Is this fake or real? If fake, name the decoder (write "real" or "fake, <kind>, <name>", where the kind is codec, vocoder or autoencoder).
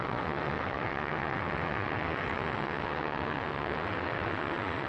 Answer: fake, vocoder, WaveNeXt